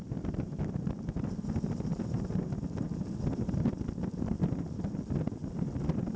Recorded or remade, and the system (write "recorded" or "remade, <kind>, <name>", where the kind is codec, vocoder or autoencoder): recorded